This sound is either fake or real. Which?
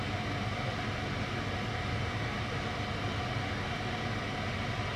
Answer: real